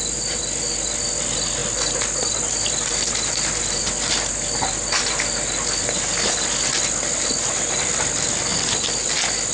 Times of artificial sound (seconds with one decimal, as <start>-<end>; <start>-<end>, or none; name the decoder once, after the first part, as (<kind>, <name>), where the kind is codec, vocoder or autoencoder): none